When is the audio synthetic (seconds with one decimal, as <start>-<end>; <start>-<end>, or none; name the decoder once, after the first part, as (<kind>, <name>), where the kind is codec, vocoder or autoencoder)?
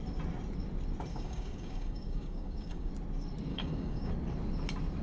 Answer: 1.1-2.9 (codec, DAC); 3.5-4.1